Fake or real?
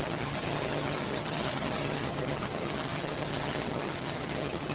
fake